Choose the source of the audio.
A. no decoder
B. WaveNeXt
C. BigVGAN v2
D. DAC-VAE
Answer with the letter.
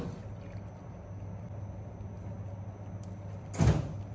A